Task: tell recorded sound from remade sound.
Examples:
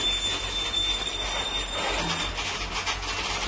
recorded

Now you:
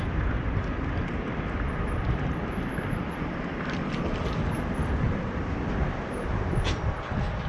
remade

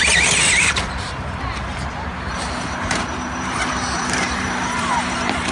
remade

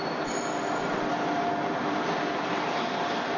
remade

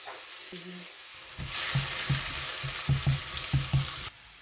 recorded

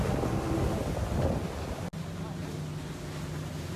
recorded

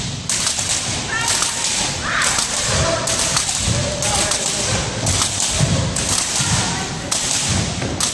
recorded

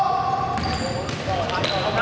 recorded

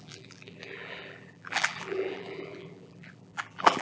remade